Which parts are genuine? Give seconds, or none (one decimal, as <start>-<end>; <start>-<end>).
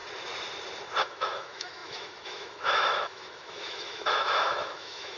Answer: 0.0-1.0